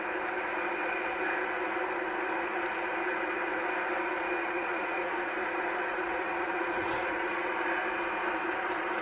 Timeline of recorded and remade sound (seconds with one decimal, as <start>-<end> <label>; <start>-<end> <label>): 0.0-4.4 recorded; 4.4-5.3 remade; 5.3-5.9 recorded; 5.9-7.5 remade; 7.5-9.0 recorded